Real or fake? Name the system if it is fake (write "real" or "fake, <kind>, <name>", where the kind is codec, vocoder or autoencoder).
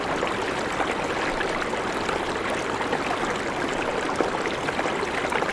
real